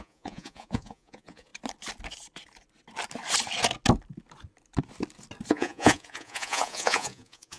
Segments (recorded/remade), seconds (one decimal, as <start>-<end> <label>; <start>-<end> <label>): 0.0-1.5 remade; 1.5-5.5 recorded; 5.5-7.6 remade

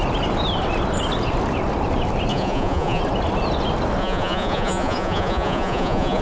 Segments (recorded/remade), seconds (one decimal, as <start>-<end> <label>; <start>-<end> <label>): 0.0-2.3 recorded; 2.3-3.0 remade; 3.0-4.0 recorded; 4.0-6.2 remade

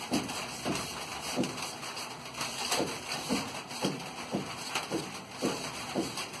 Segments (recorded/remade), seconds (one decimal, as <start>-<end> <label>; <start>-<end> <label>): 0.0-6.4 recorded

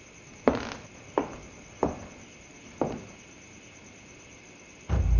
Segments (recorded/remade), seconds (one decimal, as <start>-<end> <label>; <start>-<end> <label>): 0.0-5.2 recorded